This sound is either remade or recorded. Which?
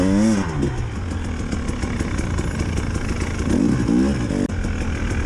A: recorded